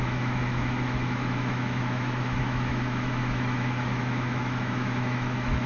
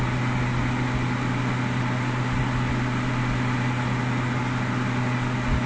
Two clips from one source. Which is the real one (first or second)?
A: second